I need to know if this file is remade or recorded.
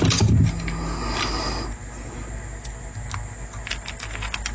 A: recorded